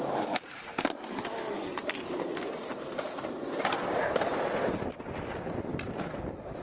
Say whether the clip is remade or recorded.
recorded